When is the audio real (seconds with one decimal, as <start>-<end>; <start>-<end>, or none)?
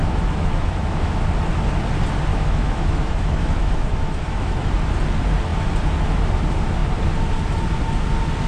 1.2-2.3; 4.7-8.5